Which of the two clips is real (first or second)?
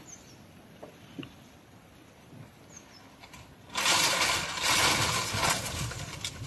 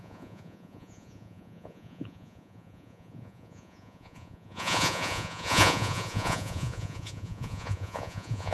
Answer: first